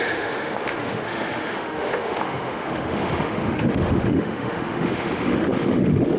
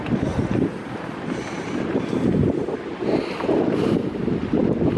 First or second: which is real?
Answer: second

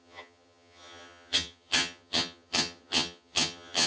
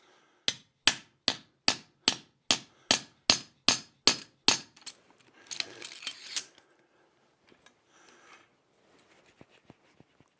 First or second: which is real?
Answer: second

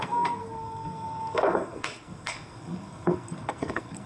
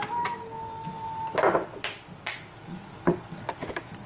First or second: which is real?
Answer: second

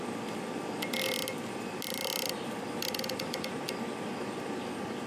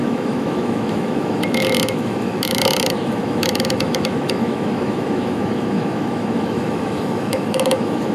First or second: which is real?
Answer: first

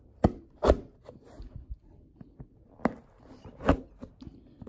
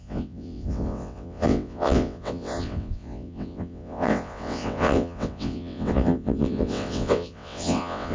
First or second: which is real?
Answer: first